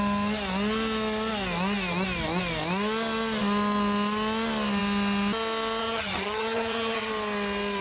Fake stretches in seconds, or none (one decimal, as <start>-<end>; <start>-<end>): 5.8-7.1